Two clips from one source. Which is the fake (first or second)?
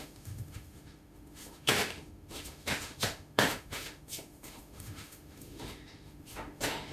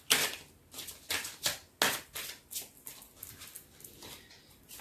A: first